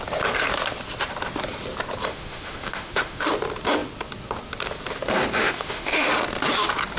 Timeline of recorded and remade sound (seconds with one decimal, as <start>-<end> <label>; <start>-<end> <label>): 0.0-2.1 recorded; 2.1-3.3 remade; 3.3-5.4 recorded; 5.4-6.1 remade; 6.1-7.0 recorded